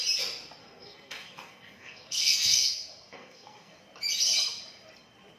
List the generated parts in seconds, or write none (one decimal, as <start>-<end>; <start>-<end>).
0.6-3.8

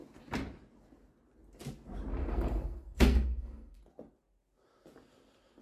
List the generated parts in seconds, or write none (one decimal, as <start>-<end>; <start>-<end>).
2.2-3.8